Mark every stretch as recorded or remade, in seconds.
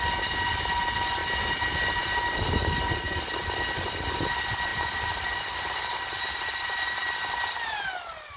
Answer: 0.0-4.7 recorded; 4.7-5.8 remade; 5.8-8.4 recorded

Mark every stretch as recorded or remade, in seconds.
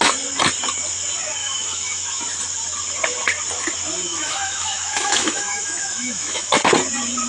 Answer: 0.0-1.4 recorded; 1.4-2.2 remade; 2.2-4.1 recorded; 4.1-6.5 remade; 6.5-7.3 recorded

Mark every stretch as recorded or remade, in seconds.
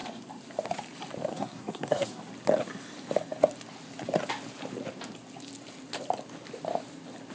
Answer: 0.0-1.3 recorded; 1.3-2.2 remade; 2.2-7.3 recorded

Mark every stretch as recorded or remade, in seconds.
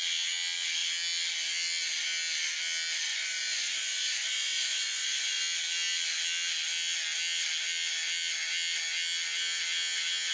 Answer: 0.0-3.1 recorded; 3.1-5.4 remade; 5.4-10.3 recorded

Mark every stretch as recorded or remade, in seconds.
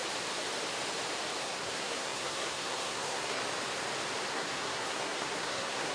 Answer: 0.0-1.4 recorded; 1.4-3.4 remade; 3.4-4.3 recorded; 4.3-5.9 remade